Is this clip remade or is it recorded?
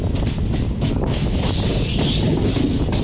recorded